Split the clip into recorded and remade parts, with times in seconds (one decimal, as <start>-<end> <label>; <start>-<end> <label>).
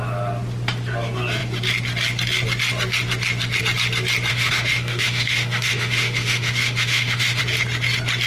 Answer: 0.0-4.3 recorded; 4.3-7.4 remade; 7.4-8.3 recorded